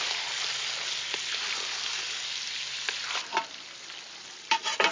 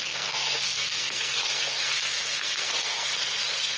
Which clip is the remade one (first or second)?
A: second